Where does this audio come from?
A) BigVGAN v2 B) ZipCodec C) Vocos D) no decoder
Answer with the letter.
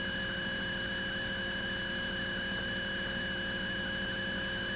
D